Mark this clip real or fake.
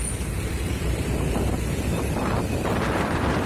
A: fake